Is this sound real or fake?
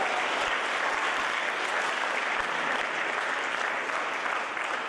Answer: real